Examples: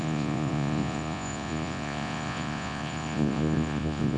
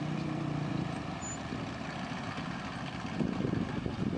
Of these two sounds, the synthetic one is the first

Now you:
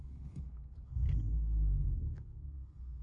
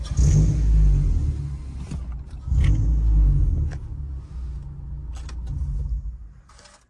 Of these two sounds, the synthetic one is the first